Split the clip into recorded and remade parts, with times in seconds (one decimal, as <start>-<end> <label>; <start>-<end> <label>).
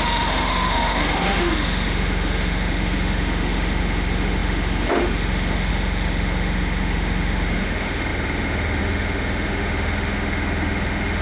0.0-11.2 remade